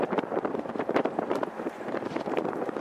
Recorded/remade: remade